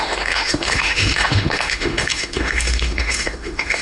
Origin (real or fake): fake